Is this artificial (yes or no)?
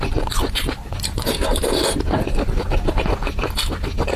no